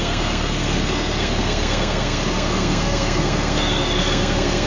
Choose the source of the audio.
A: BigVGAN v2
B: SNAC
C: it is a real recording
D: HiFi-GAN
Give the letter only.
B